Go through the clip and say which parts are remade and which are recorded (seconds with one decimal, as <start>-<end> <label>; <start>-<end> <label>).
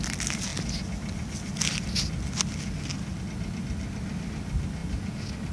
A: 0.0-5.5 recorded